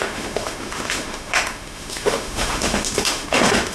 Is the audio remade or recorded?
remade